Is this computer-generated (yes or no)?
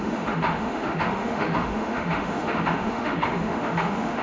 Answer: yes